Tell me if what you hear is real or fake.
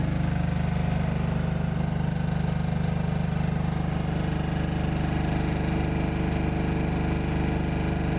real